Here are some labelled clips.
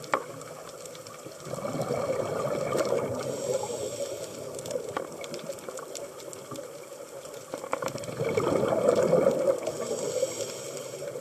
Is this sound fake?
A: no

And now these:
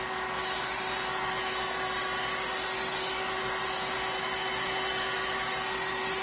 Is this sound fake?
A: no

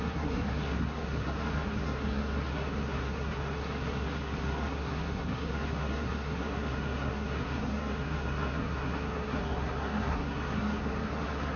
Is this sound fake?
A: yes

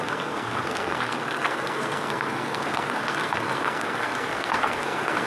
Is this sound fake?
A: yes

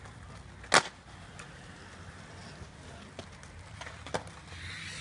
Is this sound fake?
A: no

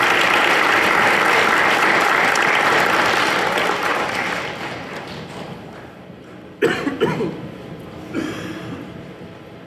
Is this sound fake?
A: no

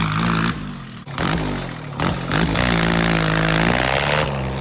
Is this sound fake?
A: no